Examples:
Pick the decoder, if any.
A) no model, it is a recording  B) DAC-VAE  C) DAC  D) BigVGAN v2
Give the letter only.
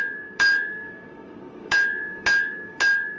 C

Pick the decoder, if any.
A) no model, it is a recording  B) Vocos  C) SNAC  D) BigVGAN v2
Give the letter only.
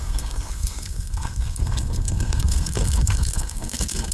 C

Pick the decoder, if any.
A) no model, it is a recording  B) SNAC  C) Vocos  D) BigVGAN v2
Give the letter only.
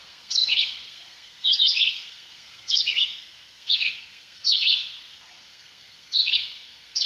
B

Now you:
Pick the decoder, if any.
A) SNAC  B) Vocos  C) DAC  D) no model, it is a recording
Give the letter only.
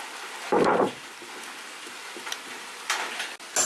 D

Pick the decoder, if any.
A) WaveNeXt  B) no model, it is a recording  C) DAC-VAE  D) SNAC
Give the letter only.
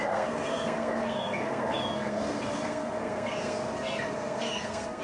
D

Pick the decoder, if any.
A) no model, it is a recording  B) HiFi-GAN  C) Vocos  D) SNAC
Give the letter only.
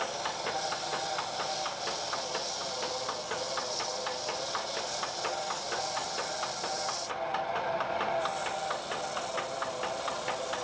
A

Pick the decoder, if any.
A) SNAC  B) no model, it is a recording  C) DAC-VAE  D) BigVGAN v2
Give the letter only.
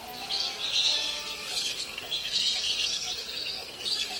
A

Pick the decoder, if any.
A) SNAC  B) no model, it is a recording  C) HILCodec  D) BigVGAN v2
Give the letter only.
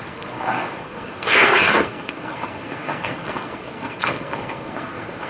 A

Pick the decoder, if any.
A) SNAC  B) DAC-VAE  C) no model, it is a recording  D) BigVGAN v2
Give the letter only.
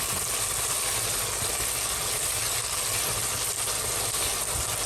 C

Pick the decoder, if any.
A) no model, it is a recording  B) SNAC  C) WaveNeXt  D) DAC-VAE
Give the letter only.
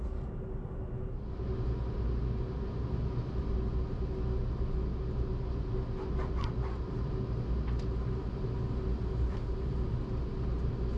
A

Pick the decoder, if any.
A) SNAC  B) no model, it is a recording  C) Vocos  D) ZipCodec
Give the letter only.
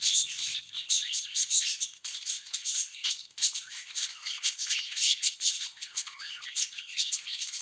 D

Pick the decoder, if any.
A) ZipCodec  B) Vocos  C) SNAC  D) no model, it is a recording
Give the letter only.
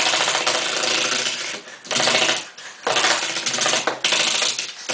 D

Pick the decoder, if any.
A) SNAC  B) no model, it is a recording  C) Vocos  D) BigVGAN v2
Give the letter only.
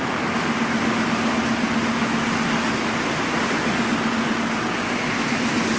B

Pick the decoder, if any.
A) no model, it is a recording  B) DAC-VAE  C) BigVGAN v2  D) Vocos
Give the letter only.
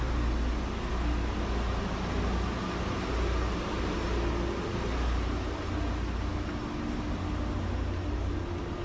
A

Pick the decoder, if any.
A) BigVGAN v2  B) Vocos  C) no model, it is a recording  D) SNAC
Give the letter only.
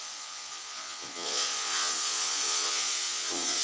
B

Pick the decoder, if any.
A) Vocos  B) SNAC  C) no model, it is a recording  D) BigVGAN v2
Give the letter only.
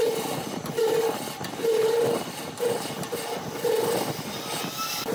C